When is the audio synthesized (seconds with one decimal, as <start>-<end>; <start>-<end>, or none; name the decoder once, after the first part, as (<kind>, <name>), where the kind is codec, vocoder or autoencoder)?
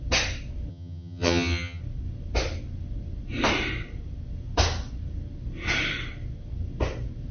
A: 0.7-1.8 (vocoder, HiFi-GAN)